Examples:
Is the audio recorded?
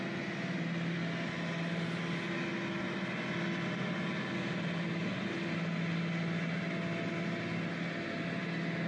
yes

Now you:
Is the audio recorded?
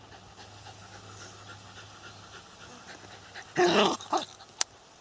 yes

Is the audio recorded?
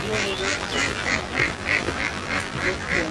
no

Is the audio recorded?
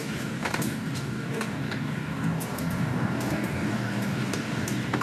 no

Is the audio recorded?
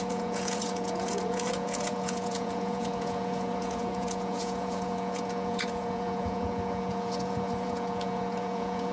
no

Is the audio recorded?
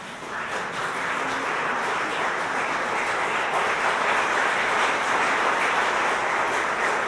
yes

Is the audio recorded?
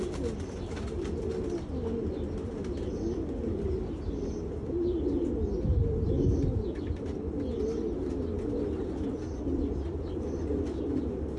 yes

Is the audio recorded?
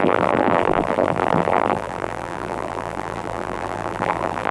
no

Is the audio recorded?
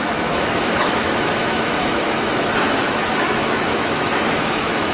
no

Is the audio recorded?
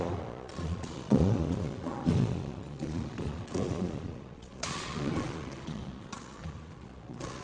no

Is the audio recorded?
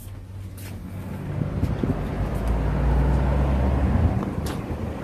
yes